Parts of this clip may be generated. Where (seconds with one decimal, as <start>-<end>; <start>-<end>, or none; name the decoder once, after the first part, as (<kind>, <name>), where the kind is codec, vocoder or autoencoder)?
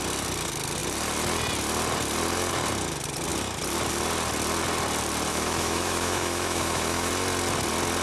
5.3-7.1 (autoencoder, DAC-VAE)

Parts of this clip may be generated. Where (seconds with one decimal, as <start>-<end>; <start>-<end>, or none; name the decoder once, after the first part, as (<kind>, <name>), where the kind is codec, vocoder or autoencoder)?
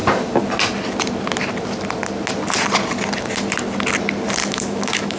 4.4-5.2 (autoencoder, DAC-VAE)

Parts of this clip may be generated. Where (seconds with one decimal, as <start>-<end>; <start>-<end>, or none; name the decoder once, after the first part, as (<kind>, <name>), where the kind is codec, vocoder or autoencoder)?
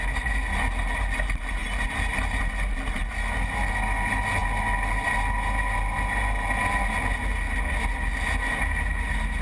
none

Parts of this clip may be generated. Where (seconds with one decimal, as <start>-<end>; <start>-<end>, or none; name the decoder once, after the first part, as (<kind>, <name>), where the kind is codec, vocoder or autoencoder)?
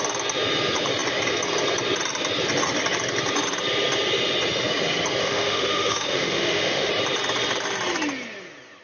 5.2-6.9 (autoencoder, DAC-VAE)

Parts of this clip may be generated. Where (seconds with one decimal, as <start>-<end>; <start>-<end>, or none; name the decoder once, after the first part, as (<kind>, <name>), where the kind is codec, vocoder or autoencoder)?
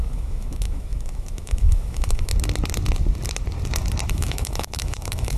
0.0-2.3 (autoencoder, DAC-VAE); 4.1-5.4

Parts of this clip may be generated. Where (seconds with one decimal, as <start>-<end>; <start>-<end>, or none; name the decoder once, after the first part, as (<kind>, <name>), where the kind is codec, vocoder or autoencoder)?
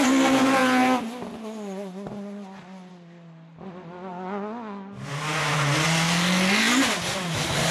none